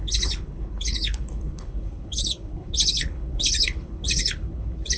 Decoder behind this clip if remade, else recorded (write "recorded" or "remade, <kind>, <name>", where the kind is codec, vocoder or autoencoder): remade, codec, HILCodec